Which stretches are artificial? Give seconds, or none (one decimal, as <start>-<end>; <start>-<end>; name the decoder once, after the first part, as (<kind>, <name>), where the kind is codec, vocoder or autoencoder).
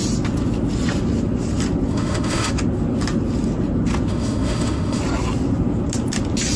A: 1.9-2.5 (autoencoder, DAC-VAE); 4.1-5.0